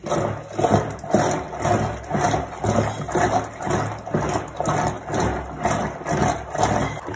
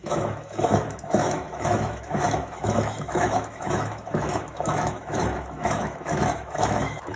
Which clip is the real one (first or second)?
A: first